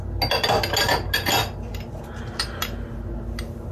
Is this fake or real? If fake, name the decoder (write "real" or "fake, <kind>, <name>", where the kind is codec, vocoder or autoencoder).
real